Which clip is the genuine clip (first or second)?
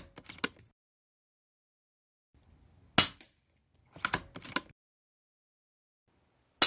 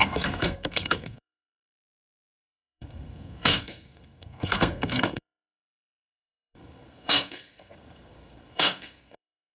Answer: first